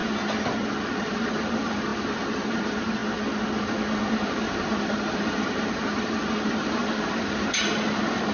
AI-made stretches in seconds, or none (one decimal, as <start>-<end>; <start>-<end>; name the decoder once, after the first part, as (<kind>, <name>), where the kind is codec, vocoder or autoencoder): 1.0-3.0 (vocoder, BigVGAN v2); 4.1-8.3